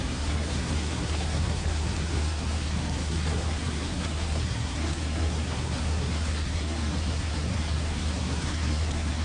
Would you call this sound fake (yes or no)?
yes